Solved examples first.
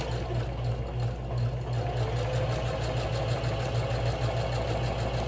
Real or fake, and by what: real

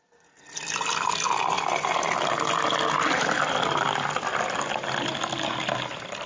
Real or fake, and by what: real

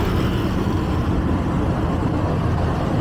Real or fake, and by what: real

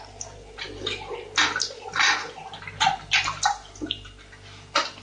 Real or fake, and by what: real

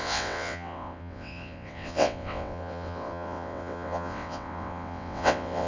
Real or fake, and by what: fake, vocoder, WaveNeXt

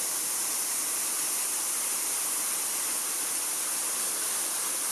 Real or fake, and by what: real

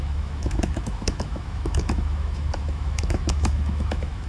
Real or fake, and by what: fake, autoencoder, DAC-VAE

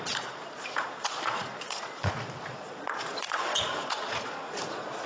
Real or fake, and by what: fake, vocoder, Vocos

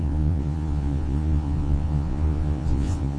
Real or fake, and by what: fake, vocoder, Vocos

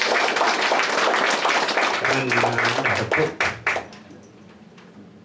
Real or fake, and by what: real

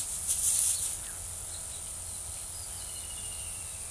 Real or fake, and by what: real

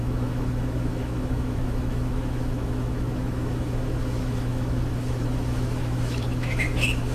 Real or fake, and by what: fake, autoencoder, DAC-VAE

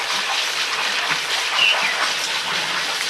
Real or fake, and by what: real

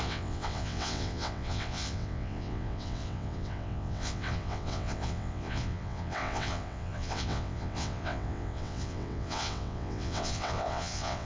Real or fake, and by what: fake, vocoder, WaveNeXt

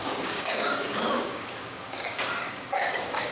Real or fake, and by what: fake, codec, DAC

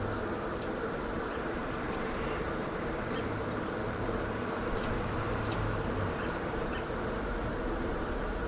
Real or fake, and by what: fake, vocoder, BigVGAN v2